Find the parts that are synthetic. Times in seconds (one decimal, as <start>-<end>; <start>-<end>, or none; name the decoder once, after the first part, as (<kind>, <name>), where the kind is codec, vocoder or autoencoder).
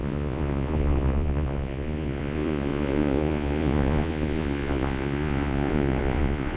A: 0.0-6.6 (vocoder, Vocos)